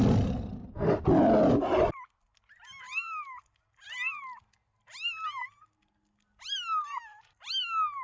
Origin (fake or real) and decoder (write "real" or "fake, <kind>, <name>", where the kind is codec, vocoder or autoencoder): real